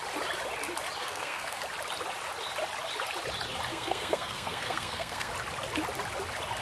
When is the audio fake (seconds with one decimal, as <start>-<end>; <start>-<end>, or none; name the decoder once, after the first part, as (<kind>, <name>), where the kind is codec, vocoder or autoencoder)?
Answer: 1.0-1.6 (codec, SNAC); 3.7-5.3